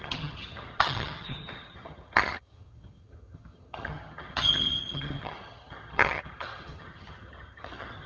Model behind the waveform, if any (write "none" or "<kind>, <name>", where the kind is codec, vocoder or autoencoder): vocoder, HiFi-GAN